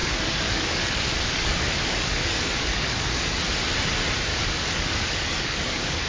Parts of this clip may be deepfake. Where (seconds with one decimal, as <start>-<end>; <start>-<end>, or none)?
0.0-3.4; 4.3-6.1